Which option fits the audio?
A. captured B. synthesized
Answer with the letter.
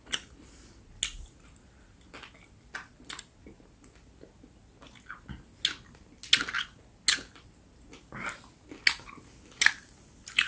A